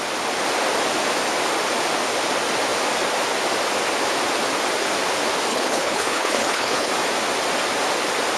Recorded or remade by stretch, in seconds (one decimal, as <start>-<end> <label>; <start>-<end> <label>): 0.0-5.5 recorded; 5.5-6.9 remade; 6.9-8.4 recorded